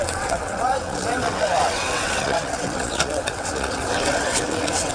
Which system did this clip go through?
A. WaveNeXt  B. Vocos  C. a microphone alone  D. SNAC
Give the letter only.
A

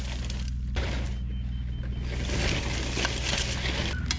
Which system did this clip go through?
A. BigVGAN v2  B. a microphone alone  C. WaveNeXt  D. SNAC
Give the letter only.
B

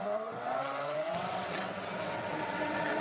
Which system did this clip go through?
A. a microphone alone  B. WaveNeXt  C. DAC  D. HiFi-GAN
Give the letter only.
B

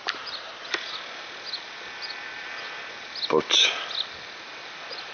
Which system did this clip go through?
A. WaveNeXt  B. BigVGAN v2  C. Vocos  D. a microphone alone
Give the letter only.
D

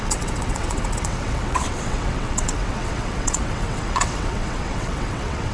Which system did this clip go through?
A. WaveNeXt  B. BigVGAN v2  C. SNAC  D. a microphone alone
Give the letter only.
A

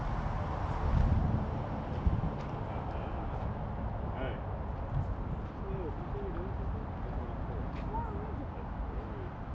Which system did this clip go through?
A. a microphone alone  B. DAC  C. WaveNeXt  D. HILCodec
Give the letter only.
A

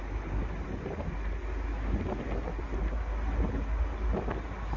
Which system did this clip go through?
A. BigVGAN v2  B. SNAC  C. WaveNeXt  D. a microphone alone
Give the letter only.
D